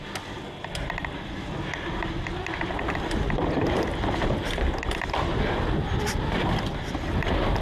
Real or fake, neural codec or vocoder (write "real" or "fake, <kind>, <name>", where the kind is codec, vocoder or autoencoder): real